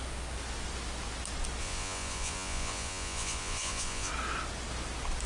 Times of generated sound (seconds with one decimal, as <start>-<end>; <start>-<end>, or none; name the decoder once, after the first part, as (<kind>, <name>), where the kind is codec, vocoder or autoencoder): 1.6-4.1 (vocoder, Vocos)